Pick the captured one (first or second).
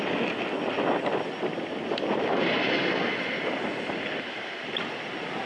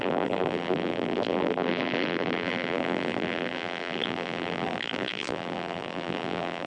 first